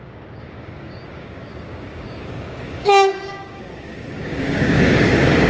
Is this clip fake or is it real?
fake